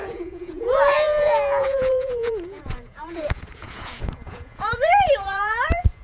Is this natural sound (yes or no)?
no